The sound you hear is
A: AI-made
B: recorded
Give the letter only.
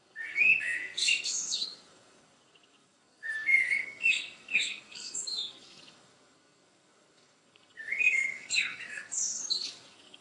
A